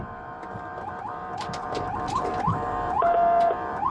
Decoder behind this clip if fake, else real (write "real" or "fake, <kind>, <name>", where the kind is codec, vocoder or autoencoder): fake, vocoder, BigVGAN v2